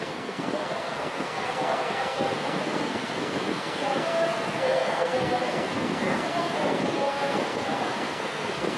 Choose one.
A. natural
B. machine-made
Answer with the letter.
B